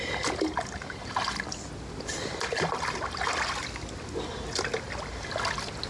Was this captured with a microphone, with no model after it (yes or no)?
yes